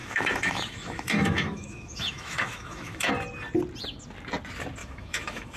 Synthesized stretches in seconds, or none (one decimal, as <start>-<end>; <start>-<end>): 0.0-3.1; 4.8-5.6